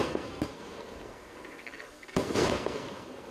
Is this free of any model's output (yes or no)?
no